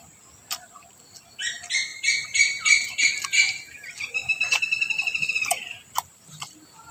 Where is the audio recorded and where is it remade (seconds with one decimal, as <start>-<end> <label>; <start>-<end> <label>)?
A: 0.0-1.9 recorded; 1.9-3.1 remade; 3.1-4.2 recorded; 4.2-6.9 remade